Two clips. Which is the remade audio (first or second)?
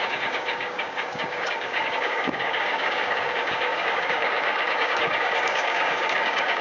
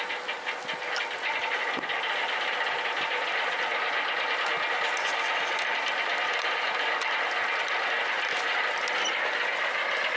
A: first